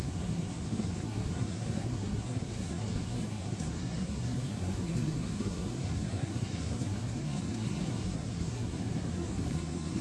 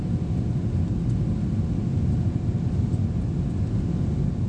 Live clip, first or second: second